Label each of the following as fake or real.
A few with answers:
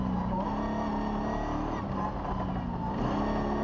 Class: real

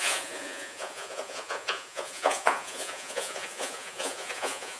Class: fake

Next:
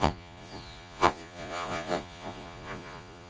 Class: fake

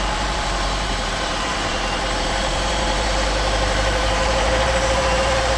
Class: fake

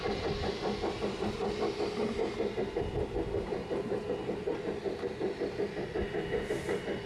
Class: real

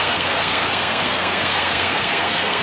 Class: fake